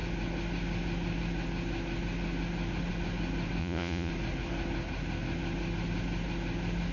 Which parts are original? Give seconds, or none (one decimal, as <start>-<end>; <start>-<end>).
0.0-3.6; 4.1-6.9